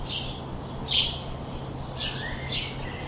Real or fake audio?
real